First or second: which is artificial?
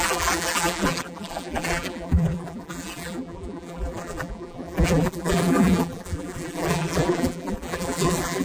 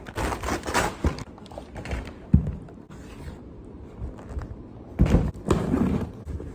first